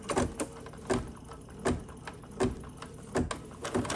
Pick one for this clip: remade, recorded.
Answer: recorded